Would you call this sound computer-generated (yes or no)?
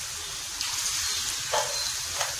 no